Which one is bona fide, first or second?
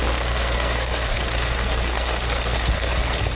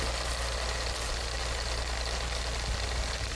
second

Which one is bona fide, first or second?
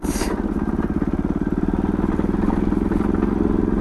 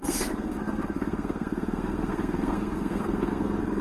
first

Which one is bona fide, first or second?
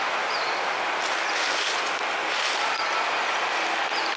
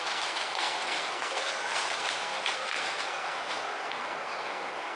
first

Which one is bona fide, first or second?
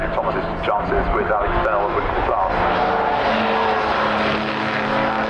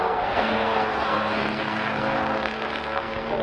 first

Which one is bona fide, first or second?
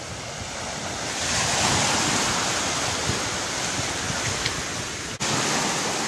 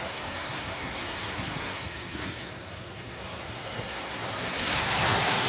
first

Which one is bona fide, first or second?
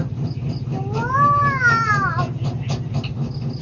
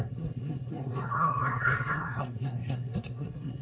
first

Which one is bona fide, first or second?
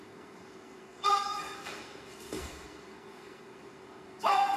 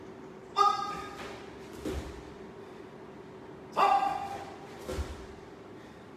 second